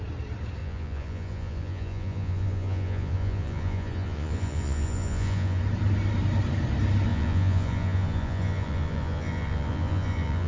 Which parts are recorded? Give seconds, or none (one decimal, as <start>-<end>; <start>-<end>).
0.0-0.6; 5.6-7.1

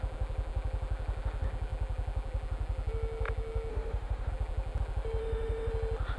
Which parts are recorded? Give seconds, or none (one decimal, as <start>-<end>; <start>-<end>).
0.0-3.7; 4.3-5.2; 5.7-6.2